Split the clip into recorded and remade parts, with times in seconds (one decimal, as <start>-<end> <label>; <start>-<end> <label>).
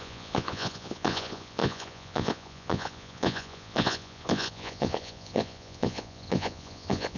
0.0-7.2 remade